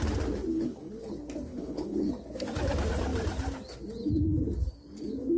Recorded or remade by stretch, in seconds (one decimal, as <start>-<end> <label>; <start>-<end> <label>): 0.0-0.5 recorded; 0.5-1.0 remade; 1.0-1.5 recorded; 1.5-2.1 remade; 2.1-5.4 recorded

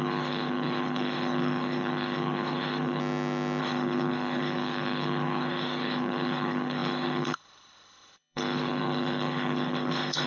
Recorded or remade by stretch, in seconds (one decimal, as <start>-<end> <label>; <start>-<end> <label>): 0.0-3.0 remade; 3.0-3.6 recorded; 3.6-10.3 remade

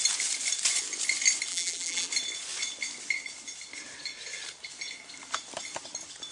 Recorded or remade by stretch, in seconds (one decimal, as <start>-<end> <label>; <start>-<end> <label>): 0.0-1.5 recorded; 1.5-2.1 remade; 2.1-6.3 recorded

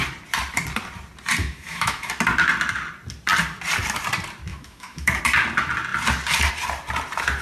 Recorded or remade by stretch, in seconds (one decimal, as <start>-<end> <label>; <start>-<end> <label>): 0.0-1.4 recorded; 1.4-2.1 remade; 2.1-4.5 recorded; 4.5-5.2 remade; 5.2-7.4 recorded

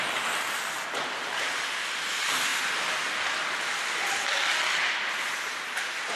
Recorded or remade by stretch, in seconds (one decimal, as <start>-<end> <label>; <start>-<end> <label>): 0.0-6.2 recorded

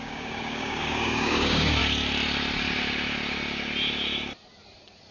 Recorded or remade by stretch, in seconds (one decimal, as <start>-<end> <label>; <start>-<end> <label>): 0.0-1.8 remade; 1.8-5.1 recorded